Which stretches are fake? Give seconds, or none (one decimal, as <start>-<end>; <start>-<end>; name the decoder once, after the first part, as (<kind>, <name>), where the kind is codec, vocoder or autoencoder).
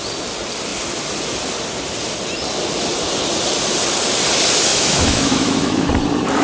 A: 4.7-5.9 (autoencoder, DAC-VAE)